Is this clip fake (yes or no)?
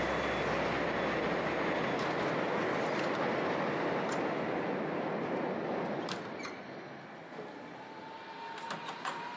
no